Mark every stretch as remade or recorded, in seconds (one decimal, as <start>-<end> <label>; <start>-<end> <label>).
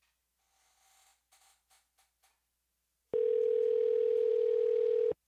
0.0-5.3 recorded